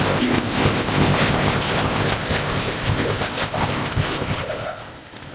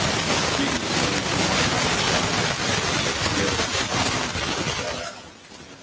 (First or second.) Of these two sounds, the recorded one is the second